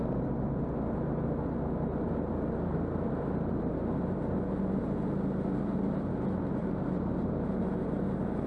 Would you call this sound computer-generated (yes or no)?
no